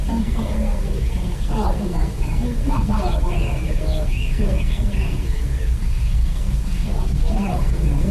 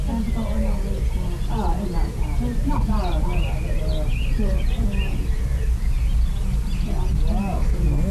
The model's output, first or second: first